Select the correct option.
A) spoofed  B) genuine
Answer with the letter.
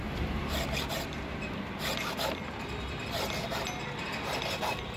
B